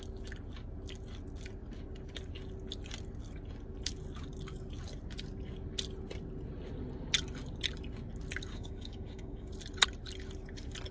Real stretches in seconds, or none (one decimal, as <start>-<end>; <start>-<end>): 0.0-8.5; 9.5-10.9